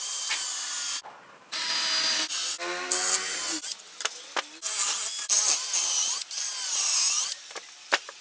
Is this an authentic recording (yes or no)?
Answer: yes